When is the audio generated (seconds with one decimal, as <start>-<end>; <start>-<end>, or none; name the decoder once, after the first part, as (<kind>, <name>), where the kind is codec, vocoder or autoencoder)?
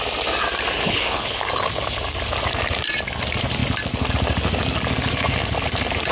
0.8-1.4 (codec, HILCodec)